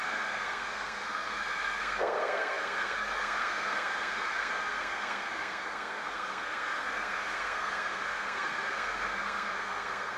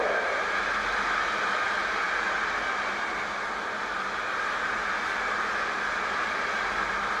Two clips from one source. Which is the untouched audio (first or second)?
second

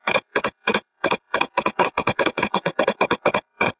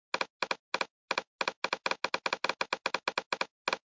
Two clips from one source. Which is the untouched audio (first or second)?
second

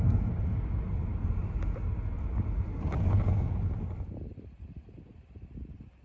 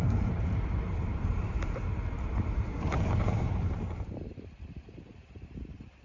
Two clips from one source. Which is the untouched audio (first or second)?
first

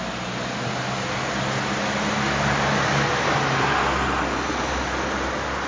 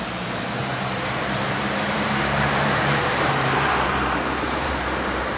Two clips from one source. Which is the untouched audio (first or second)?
first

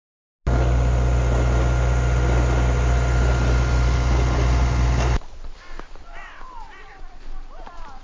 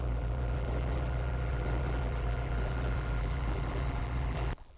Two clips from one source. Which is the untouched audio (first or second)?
first